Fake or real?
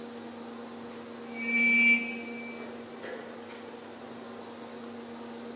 real